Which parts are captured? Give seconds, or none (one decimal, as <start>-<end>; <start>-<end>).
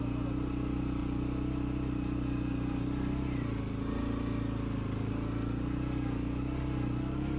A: 0.0-7.4